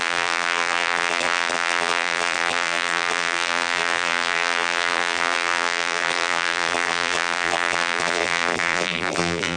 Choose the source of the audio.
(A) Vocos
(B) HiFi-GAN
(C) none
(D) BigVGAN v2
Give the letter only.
D